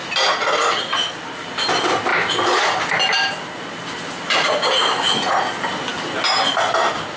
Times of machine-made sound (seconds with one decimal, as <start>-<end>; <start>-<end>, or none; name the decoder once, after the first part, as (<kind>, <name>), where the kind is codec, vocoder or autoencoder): none

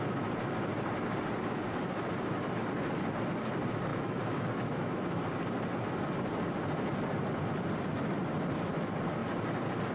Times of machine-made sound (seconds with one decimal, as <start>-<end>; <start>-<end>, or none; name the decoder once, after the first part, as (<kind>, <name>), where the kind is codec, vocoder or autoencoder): 3.9-5.2 (autoencoder, DAC-VAE)

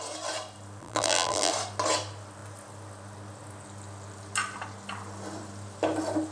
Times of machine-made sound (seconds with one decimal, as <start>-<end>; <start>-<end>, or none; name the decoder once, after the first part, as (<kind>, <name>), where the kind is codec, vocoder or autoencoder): 0.8-1.5 (vocoder, BigVGAN v2)

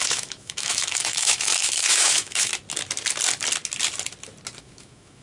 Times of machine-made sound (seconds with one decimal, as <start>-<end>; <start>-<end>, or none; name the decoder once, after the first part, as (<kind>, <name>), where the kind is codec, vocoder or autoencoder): 0.0-2.5 (autoencoder, DAC-VAE); 4.6-5.2